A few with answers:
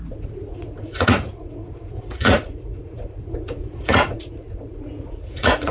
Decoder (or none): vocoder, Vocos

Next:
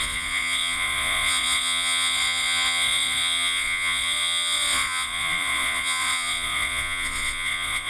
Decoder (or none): vocoder, Vocos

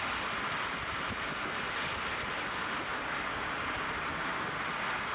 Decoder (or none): none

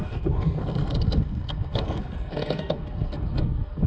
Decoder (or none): codec, SNAC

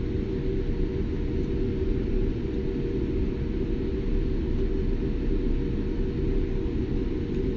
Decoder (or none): none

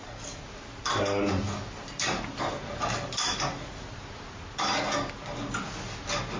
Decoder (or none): none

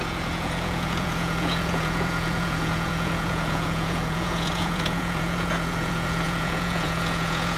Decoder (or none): vocoder, Vocos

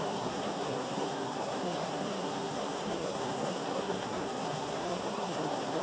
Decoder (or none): codec, SNAC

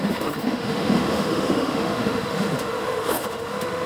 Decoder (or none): autoencoder, DAC-VAE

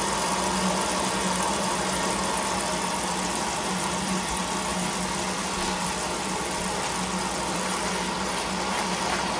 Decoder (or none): none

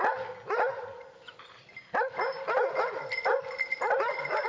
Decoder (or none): none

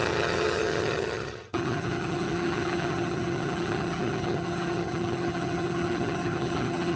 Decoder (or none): vocoder, HiFi-GAN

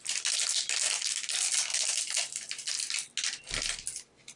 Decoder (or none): none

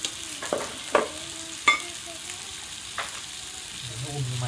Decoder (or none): none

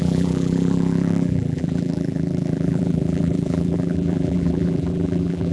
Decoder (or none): vocoder, BigVGAN v2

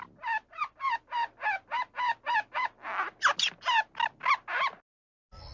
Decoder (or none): none